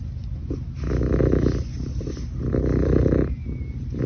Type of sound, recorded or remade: recorded